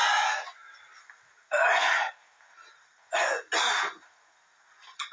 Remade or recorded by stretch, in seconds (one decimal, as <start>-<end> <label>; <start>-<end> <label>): 0.0-5.1 recorded